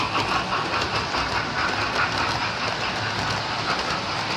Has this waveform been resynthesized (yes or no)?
no